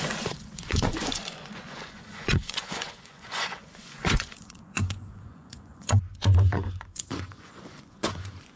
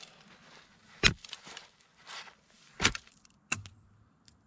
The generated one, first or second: first